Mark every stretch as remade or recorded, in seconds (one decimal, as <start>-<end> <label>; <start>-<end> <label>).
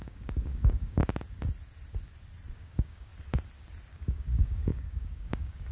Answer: 0.0-1.0 remade; 1.0-2.5 recorded; 2.5-3.1 remade; 3.1-3.9 recorded; 3.9-5.7 remade